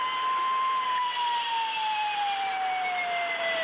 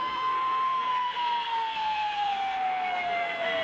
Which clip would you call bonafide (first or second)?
first